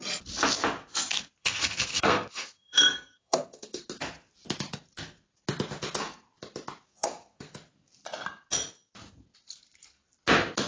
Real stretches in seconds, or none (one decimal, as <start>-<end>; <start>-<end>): 0.0-1.4; 3.9-6.9; 7.5-10.7

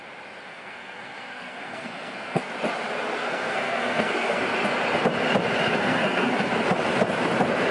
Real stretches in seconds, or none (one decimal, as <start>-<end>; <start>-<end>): 0.0-0.4; 2.5-3.2; 4.4-5.7; 6.5-7.7

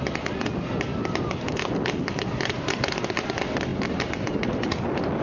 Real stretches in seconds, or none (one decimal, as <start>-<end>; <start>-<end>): 0.0-5.2